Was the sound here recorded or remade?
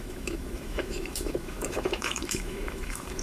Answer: remade